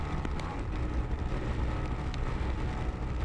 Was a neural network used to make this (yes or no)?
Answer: no